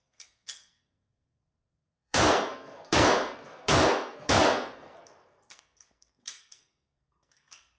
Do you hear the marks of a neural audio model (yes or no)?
yes